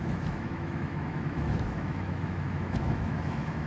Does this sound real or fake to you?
fake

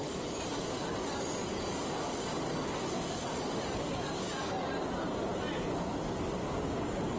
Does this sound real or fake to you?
fake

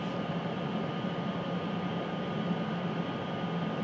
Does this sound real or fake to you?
real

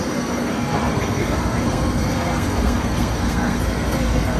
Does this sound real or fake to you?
fake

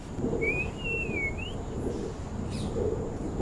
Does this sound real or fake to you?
real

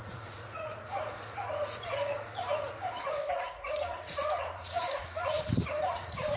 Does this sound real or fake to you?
fake